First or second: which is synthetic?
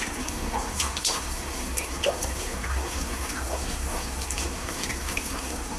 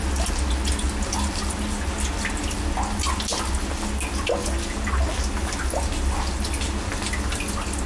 first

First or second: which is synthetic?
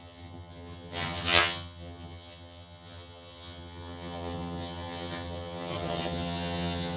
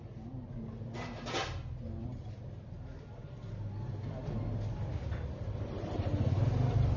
first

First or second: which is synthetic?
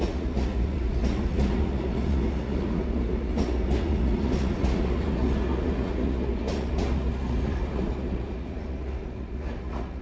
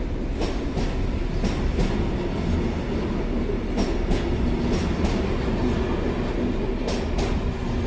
first